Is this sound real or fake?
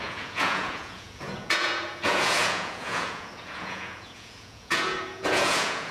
fake